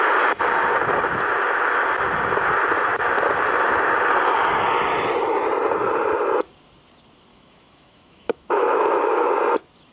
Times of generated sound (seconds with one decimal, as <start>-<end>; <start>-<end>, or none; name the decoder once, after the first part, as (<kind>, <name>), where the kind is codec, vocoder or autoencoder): 7.3-9.3 (autoencoder, DAC-VAE)